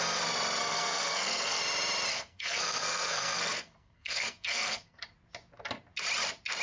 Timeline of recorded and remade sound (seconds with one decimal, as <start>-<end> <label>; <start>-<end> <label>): 0.0-0.6 recorded; 0.6-1.6 remade; 1.6-2.1 recorded; 2.1-5.0 remade; 5.0-6.6 recorded